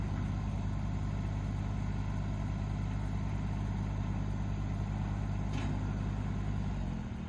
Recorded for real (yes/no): yes